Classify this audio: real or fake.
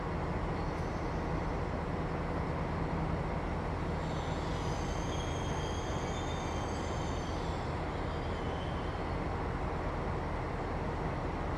real